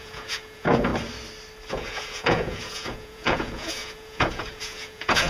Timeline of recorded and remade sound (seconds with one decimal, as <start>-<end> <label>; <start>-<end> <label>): 0.0-0.9 remade; 0.9-1.7 recorded; 1.7-5.3 remade